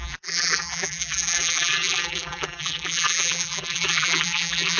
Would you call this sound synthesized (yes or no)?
yes